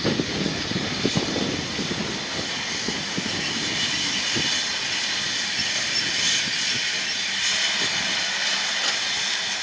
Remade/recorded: recorded